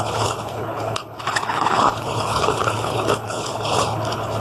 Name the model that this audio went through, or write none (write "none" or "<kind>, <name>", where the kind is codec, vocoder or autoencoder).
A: codec, HILCodec